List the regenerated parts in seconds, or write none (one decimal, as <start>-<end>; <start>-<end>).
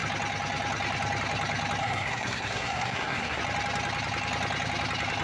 1.8-3.4